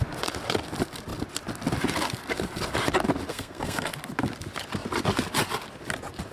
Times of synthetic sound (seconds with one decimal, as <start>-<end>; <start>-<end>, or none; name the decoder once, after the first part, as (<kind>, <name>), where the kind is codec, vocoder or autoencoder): 3.3-3.9 (codec, SNAC)